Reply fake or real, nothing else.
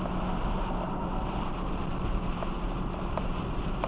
real